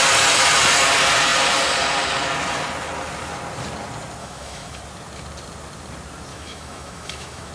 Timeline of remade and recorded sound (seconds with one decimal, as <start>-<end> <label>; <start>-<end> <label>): 0.0-4.2 recorded; 4.2-4.8 remade; 4.8-6.3 recorded; 6.3-7.5 remade